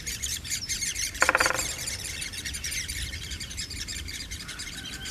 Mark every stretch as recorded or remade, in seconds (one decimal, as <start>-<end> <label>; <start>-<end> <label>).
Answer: 0.0-5.1 remade